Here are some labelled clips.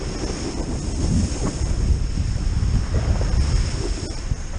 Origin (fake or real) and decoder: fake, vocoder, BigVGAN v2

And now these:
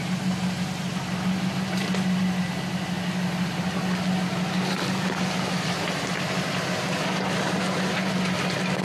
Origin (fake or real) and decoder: real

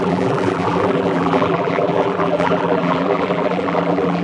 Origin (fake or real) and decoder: fake, vocoder, BigVGAN v2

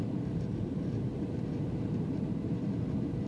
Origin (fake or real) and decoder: fake, vocoder, BigVGAN v2